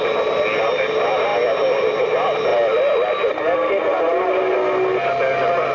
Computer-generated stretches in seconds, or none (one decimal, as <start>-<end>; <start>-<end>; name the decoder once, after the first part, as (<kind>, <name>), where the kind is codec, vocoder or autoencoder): none